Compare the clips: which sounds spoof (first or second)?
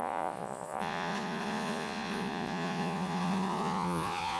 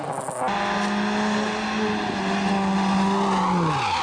first